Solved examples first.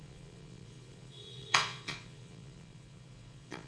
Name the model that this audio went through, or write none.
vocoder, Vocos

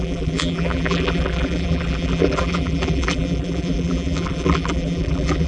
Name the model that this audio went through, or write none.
vocoder, BigVGAN v2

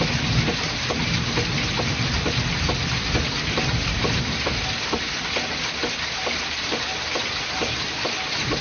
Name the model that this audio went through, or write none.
none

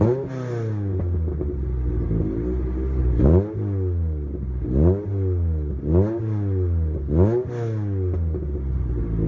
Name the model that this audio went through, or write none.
none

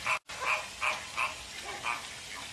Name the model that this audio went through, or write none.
none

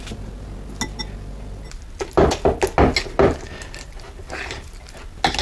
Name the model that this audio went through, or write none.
none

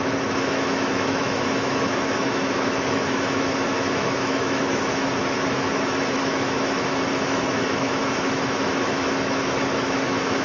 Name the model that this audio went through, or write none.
autoencoder, DAC-VAE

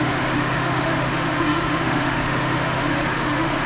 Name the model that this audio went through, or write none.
autoencoder, DAC-VAE